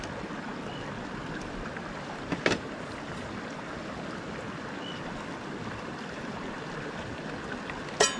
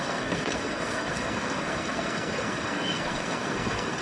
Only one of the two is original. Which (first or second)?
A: first